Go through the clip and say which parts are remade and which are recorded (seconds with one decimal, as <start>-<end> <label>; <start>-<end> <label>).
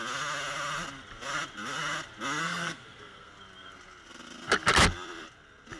0.0-2.4 recorded; 2.4-3.3 remade; 3.3-5.8 recorded